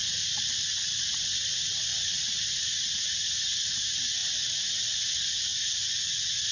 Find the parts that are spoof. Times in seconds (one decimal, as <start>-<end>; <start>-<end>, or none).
0.0-1.1; 1.9-3.8; 5.5-6.1